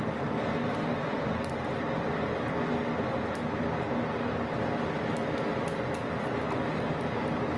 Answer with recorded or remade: recorded